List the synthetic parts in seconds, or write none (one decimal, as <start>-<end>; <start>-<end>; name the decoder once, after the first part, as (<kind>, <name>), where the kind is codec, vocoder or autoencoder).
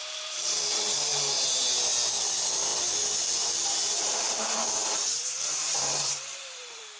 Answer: 0.0-1.1 (vocoder, BigVGAN v2); 2.1-7.0